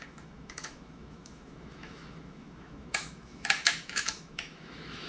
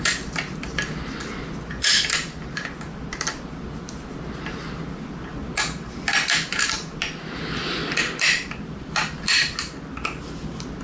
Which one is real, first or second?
second